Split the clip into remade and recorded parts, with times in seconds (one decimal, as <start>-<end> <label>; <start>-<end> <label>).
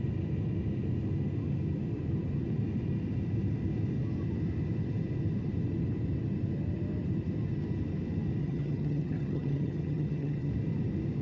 0.0-8.4 recorded; 8.4-10.5 remade; 10.5-11.2 recorded